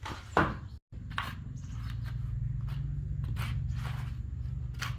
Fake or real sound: real